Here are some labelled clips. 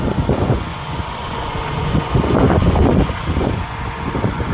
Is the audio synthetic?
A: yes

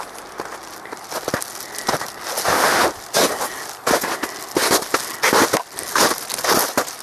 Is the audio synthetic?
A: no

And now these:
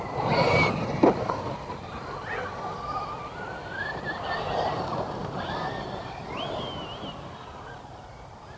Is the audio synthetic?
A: no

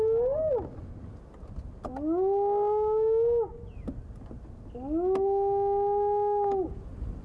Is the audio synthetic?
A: no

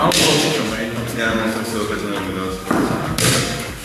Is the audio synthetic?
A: yes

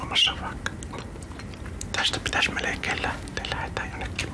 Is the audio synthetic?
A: no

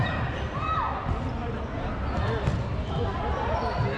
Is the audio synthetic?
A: no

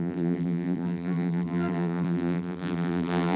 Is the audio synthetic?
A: yes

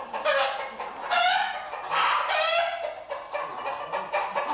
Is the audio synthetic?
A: no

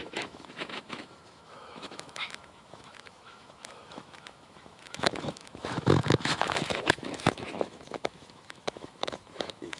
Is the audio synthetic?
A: yes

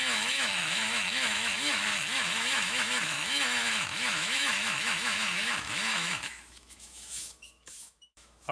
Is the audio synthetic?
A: yes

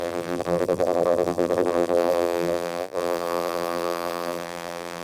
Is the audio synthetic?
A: yes